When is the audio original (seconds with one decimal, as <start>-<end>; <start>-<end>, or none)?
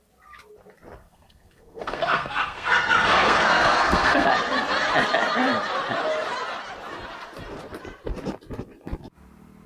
0.0-1.0; 4.3-9.7